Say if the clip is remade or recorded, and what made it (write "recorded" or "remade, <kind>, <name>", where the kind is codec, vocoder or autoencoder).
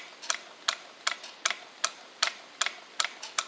recorded